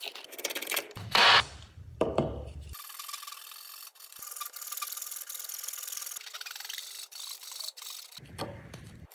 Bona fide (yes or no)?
no